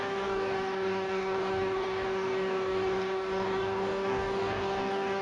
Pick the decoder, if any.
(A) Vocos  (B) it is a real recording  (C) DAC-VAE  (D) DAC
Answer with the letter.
D